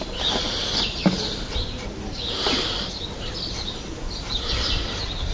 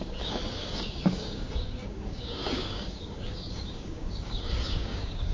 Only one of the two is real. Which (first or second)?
first